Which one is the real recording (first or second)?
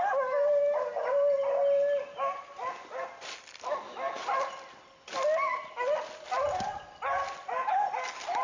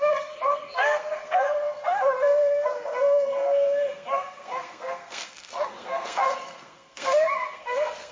first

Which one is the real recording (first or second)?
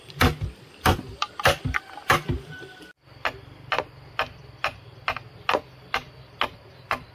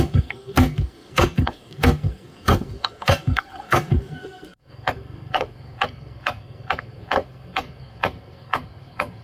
first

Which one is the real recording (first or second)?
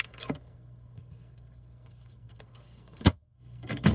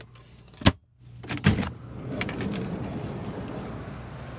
second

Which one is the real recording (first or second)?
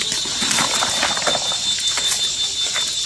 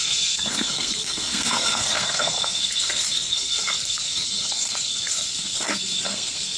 first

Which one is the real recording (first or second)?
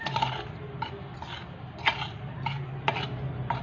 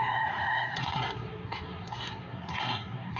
first